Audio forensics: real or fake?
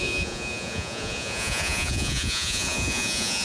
fake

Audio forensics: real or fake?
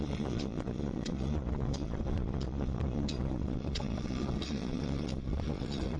fake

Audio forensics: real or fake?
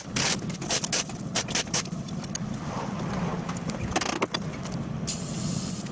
fake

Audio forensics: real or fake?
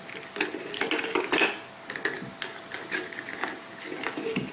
real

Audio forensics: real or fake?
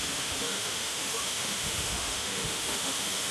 fake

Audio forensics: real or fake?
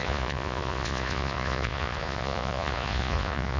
fake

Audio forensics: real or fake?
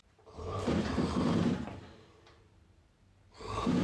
fake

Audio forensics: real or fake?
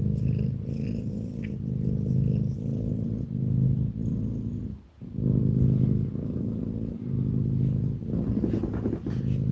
real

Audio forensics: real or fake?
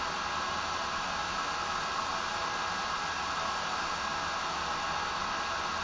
real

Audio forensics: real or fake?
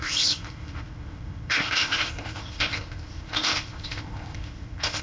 fake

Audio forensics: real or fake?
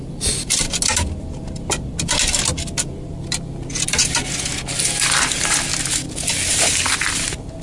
real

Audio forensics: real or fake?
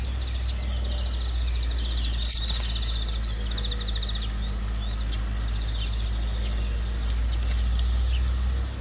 real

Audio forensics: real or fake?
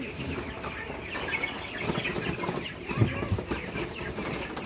real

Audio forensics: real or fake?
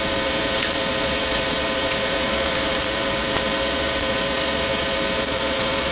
fake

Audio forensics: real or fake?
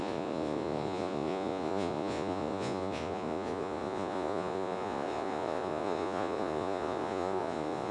fake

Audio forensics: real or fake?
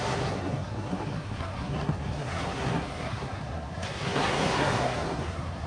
fake